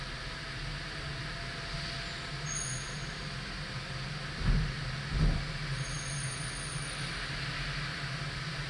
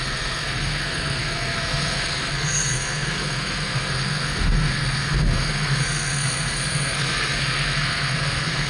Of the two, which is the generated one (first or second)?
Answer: second